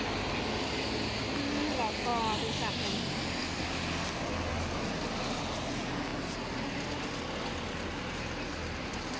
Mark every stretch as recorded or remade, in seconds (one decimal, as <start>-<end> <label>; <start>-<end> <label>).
0.0-9.2 recorded